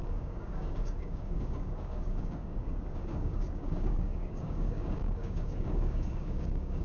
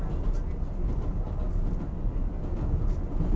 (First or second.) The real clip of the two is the second